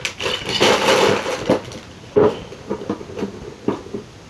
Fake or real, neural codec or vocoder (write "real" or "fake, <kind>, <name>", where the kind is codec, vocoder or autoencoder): real